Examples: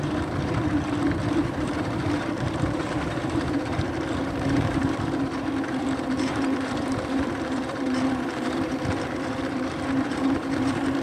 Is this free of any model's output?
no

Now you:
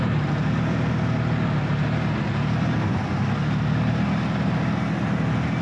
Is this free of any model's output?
yes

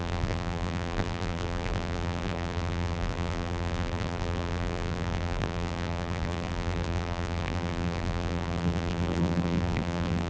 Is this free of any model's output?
no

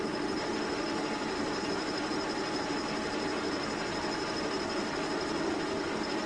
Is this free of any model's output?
yes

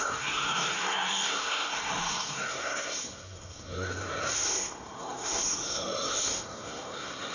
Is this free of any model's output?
no